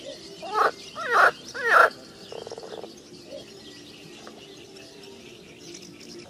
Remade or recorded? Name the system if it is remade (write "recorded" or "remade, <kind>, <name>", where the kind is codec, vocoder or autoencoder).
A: recorded